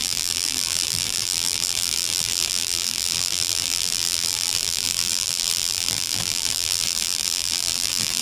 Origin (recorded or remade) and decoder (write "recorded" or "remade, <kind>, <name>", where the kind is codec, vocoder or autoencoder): remade, vocoder, BigVGAN v2